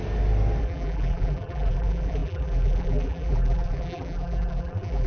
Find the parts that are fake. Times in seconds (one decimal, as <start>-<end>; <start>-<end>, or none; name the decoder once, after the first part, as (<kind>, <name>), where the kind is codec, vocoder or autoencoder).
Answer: 0.6-5.1 (vocoder, BigVGAN v2)